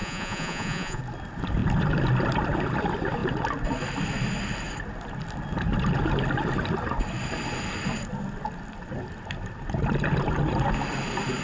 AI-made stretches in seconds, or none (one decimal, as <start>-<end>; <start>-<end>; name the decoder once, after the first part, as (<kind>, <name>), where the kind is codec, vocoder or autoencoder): 0.0-1.0 (vocoder, Vocos)

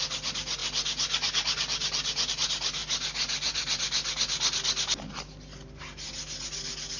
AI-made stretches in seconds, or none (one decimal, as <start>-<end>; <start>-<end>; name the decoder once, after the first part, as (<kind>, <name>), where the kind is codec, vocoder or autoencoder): none

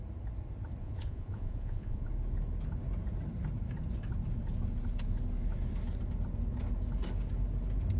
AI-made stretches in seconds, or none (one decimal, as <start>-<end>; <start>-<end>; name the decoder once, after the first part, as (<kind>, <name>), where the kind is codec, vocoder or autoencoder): 0.8-2.1 (vocoder, Vocos)

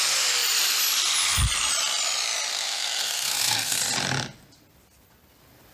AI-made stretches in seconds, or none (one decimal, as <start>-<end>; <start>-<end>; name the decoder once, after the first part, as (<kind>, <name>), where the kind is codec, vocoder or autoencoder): 2.5-3.8 (codec, SNAC)

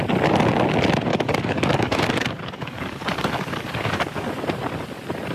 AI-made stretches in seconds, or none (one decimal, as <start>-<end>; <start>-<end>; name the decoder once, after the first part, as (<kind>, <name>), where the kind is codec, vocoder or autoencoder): 1.1-4.3 (codec, DAC)